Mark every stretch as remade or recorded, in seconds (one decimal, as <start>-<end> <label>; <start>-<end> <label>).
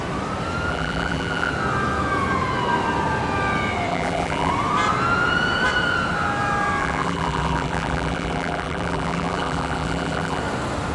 0.0-0.7 recorded; 0.7-1.5 remade; 1.5-3.9 recorded; 3.9-4.5 remade; 4.5-6.8 recorded; 6.8-10.4 remade; 10.4-10.9 recorded